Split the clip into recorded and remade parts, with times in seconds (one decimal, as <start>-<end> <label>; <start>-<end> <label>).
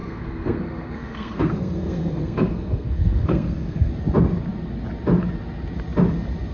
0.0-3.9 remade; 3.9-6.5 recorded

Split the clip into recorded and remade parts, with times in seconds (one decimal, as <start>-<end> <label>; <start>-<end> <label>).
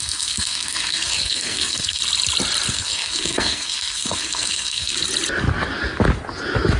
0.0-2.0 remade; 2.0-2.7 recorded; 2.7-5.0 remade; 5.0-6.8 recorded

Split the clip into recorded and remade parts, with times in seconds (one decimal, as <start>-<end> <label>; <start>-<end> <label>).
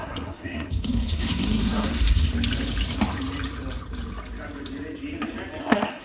0.0-2.3 remade; 2.3-5.6 recorded; 5.6-6.0 remade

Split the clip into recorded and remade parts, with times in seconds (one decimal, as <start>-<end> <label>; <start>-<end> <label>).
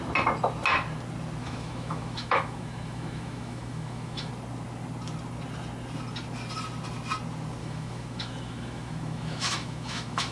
0.0-1.4 recorded; 1.4-4.3 remade; 4.3-7.6 recorded; 7.6-10.3 remade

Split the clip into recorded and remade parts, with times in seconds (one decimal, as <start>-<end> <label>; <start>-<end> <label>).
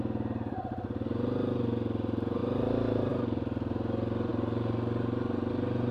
0.0-5.9 recorded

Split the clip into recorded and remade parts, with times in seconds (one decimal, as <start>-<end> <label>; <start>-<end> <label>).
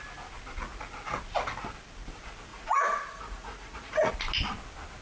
0.0-2.5 recorded; 2.5-4.1 remade; 4.1-5.0 recorded